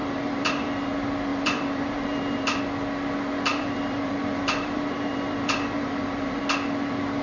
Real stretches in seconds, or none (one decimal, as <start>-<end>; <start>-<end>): 0.9-1.3; 2.6-3.5; 6.4-7.2

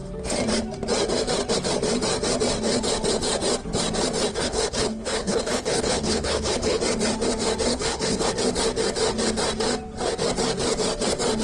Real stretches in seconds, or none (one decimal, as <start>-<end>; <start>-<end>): 0.0-4.3; 6.8-7.7; 8.3-11.4